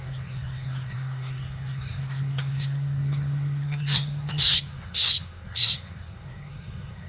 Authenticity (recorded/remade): remade